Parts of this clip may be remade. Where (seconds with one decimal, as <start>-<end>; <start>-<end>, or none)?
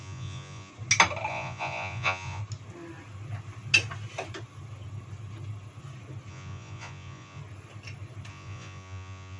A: 0.0-0.7; 1.3-2.4; 6.3-7.4; 8.3-9.4